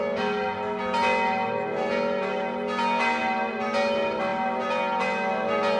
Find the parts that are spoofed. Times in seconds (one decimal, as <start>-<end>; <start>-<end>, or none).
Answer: none